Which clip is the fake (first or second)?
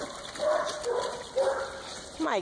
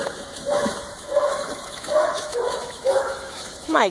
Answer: second